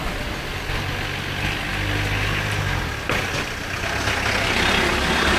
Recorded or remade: recorded